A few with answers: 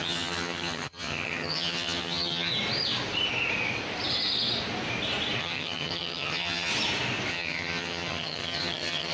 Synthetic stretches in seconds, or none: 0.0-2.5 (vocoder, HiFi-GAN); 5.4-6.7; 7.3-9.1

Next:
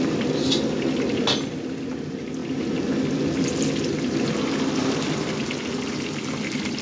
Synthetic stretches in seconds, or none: none

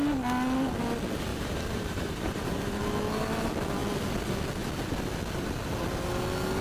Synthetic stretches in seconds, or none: 1.3-2.8 (vocoder, BigVGAN v2)

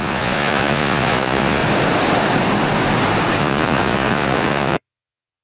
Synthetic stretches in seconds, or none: 0.0-1.6 (vocoder, Vocos); 3.4-5.4

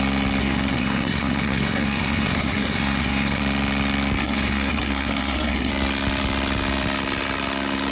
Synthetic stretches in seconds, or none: 0.4-3.4 (codec, SNAC); 4.2-5.7